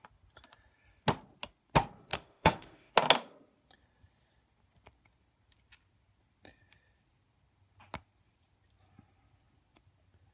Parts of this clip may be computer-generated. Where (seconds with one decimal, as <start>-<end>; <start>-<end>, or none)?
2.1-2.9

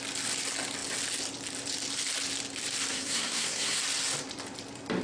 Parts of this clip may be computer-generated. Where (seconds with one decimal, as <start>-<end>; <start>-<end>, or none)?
2.9-3.8

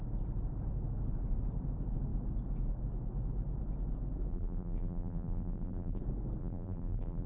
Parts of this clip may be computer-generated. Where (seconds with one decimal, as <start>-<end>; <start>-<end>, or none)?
4.3-6.0; 6.4-7.3

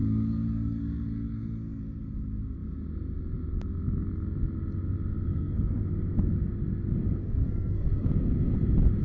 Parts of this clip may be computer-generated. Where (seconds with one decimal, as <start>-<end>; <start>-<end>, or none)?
0.0-1.8; 5.3-5.8; 7.2-8.1

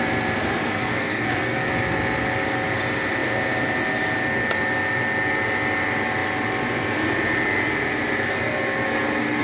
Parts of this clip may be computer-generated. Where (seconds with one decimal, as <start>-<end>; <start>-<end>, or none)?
0.4-1.7

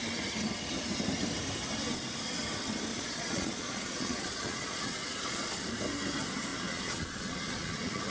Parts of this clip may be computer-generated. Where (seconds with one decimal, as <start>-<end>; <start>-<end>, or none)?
2.9-5.5; 6.5-8.1

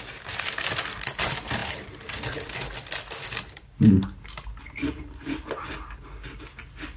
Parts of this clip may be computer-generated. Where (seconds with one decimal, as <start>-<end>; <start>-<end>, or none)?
none